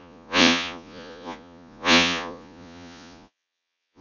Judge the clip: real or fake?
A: fake